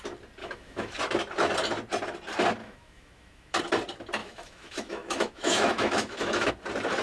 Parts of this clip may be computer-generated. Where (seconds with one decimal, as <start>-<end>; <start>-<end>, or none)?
0.4-1.0; 2.6-3.6; 4.2-6.5